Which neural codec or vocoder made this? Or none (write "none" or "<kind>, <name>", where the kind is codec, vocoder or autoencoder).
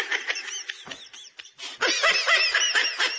none